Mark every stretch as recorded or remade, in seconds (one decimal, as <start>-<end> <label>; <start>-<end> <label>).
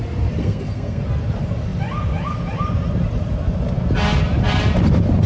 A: 0.0-0.4 recorded; 0.4-1.0 remade; 1.0-5.3 recorded